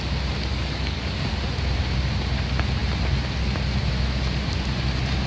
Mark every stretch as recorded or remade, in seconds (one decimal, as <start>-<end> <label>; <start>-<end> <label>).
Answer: 0.0-0.5 recorded; 0.5-1.3 remade; 1.3-5.3 recorded